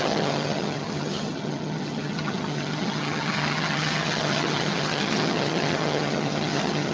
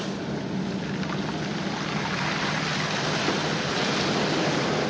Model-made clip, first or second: first